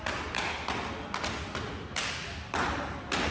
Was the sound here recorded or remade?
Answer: recorded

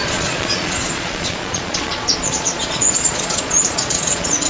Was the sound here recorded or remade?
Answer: remade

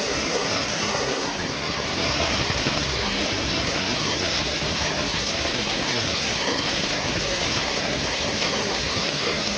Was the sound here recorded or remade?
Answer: remade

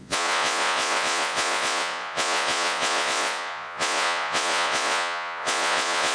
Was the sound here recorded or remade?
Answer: remade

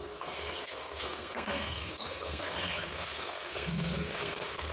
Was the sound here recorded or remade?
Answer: remade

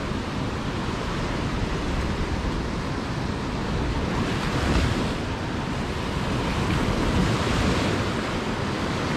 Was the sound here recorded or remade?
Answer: recorded